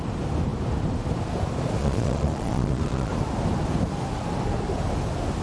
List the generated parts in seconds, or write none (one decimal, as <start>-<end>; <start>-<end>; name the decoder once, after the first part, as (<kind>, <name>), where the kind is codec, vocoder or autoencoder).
1.8-3.1 (vocoder, Vocos)